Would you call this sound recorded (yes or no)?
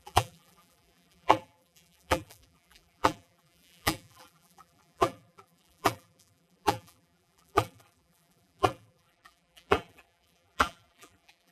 no